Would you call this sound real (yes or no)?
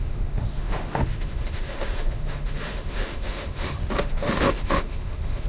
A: no